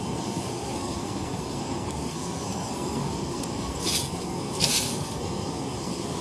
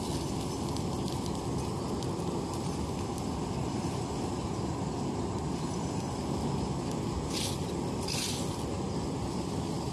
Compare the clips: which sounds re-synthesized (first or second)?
first